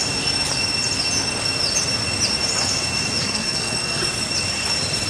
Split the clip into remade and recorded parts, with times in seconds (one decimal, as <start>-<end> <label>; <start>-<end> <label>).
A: 0.0-3.2 recorded; 3.2-4.0 remade; 4.0-5.1 recorded